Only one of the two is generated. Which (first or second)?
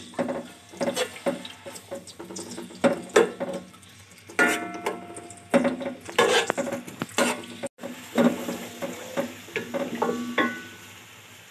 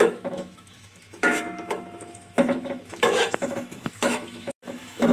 second